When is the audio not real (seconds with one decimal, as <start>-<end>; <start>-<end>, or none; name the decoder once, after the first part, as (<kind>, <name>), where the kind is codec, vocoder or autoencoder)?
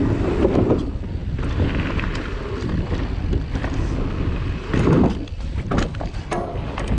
none